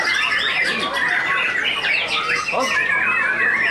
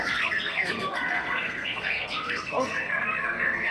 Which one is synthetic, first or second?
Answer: second